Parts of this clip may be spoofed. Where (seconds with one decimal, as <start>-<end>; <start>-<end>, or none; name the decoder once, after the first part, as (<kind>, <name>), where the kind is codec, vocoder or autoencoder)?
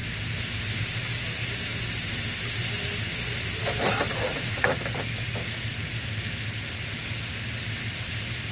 4.3-4.8 (vocoder, Vocos)